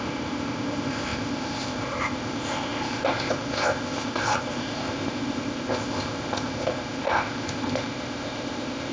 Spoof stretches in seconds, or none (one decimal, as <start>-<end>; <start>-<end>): 0.0-8.9